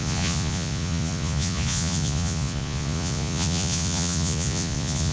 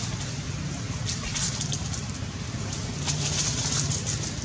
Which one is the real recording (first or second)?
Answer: second